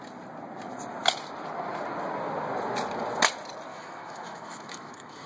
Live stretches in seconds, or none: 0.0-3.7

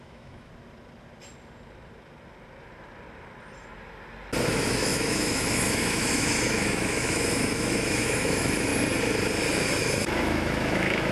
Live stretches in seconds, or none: 0.5-4.5; 8.7-9.8

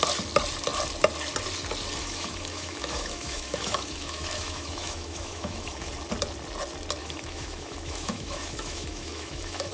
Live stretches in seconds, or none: 0.0-2.0; 5.9-7.0

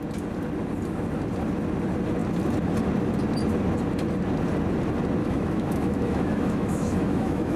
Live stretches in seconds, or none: 0.0-5.2

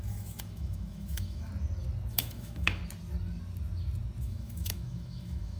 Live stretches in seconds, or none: 1.5-2.1; 2.8-4.2

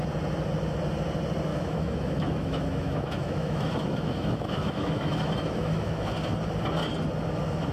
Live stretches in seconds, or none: 0.0-1.5; 6.1-7.7